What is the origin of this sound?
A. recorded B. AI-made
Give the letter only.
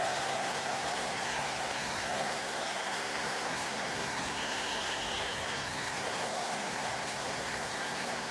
B